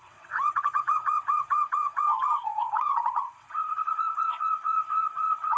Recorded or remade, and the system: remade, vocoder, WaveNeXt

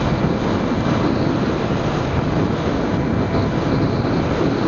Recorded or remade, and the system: recorded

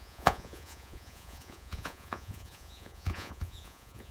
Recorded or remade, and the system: remade, vocoder, Vocos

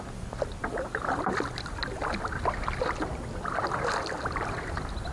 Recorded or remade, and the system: recorded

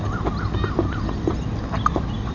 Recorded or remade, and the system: recorded